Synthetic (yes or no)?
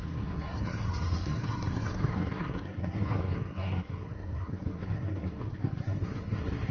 yes